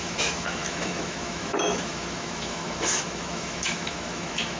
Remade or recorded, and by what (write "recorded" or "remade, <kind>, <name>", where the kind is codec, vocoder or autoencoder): remade, autoencoder, DAC-VAE